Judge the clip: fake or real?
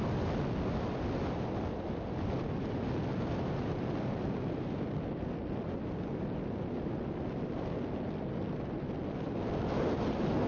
real